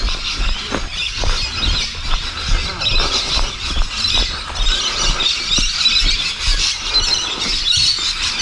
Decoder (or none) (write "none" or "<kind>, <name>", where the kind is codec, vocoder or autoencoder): none